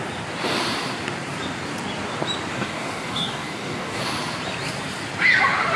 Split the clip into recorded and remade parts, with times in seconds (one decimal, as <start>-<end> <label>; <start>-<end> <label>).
0.0-2.5 recorded; 2.5-4.0 remade; 4.0-5.8 recorded